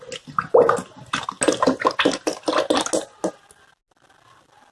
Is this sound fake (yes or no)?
no